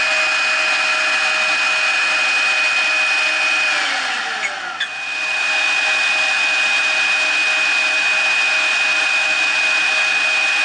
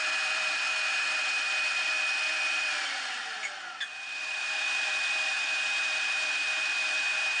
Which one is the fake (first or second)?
second